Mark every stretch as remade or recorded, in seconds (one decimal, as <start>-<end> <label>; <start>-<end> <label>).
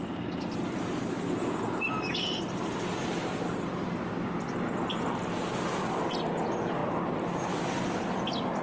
0.0-8.6 recorded